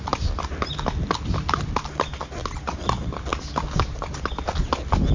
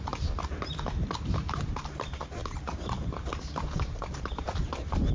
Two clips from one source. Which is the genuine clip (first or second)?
first